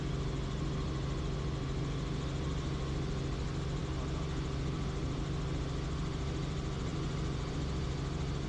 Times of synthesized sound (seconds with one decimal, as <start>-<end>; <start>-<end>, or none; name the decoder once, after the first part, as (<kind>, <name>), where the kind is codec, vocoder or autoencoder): none